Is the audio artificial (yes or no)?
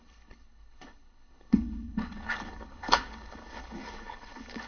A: yes